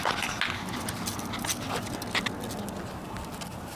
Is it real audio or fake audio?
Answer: real